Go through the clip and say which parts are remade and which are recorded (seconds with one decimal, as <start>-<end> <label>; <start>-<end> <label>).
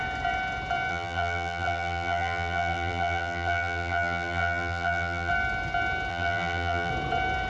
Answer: 0.0-0.9 recorded; 0.9-5.3 remade; 5.3-6.1 recorded; 6.1-6.9 remade; 6.9-7.5 recorded